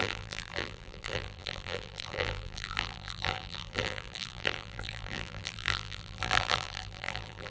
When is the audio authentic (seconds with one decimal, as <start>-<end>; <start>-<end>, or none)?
none